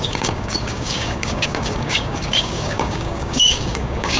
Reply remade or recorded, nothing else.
remade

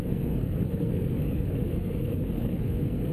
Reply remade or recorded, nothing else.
remade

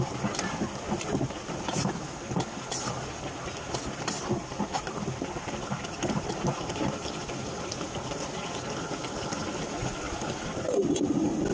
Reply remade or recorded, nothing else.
recorded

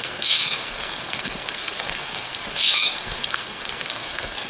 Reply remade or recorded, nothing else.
remade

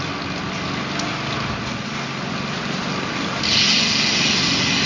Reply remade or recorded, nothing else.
recorded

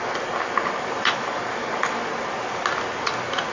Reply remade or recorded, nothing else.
recorded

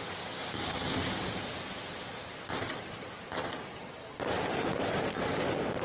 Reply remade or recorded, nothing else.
recorded